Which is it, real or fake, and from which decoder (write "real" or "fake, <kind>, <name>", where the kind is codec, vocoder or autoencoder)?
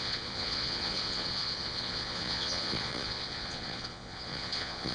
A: fake, vocoder, Vocos